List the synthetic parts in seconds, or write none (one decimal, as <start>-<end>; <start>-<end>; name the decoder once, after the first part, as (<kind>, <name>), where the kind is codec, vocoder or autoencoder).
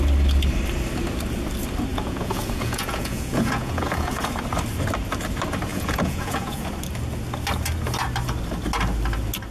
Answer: 1.9-4.3 (vocoder, Vocos); 5.7-6.7